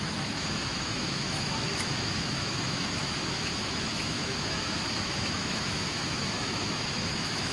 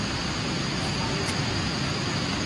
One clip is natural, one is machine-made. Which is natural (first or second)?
second